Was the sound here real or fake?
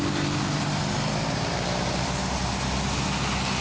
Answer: real